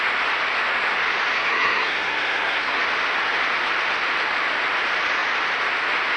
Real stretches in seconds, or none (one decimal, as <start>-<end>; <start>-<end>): 0.0-1.4; 2.8-6.2